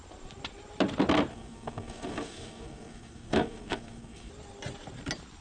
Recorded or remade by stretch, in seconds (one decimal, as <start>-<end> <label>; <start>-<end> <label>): 0.0-1.3 recorded; 1.3-4.3 remade; 4.3-5.4 recorded